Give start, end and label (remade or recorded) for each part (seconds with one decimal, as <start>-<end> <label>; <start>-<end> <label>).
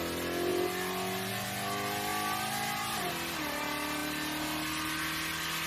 0.0-5.7 recorded